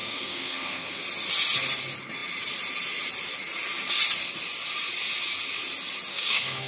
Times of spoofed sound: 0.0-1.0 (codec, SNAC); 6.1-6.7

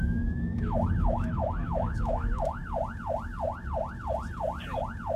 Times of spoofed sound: 0.0-2.6 (autoencoder, DAC-VAE)